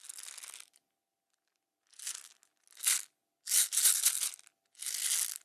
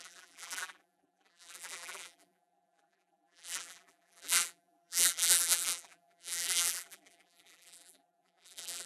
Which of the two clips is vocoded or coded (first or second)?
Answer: second